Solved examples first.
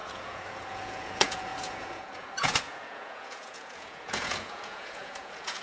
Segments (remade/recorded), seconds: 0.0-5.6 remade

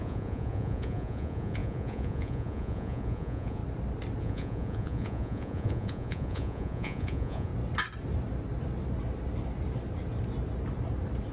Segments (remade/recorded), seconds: 0.0-3.6 remade; 3.6-4.2 recorded; 4.2-7.5 remade; 7.5-11.3 recorded

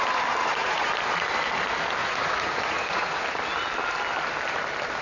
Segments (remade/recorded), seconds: 0.0-0.4 recorded; 0.4-0.9 remade; 0.9-2.0 recorded; 2.0-3.2 remade; 3.2-5.0 recorded

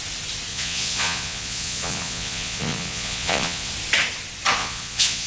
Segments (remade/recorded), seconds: 0.0-0.5 recorded; 0.5-3.7 remade; 3.7-4.6 recorded; 4.6-5.3 remade

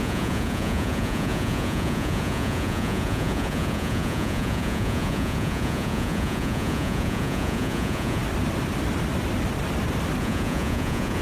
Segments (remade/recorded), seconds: 0.0-8.2 remade; 8.2-10.2 recorded; 10.2-11.2 remade

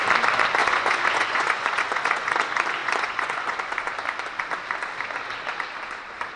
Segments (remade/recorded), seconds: 0.0-0.6 recorded; 0.6-2.3 remade; 2.3-2.8 recorded; 2.8-3.7 remade; 3.7-6.4 recorded